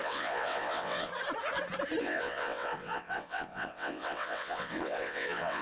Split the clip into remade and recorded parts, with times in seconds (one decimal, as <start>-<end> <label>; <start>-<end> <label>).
0.0-1.1 remade; 1.1-2.0 recorded; 2.0-5.6 remade